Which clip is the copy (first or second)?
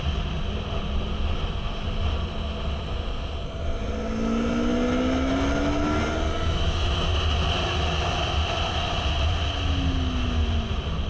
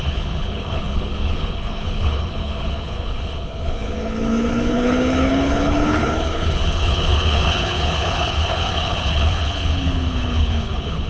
second